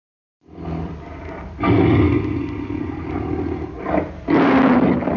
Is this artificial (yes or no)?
no